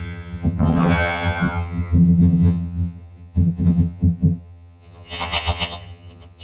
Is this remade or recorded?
remade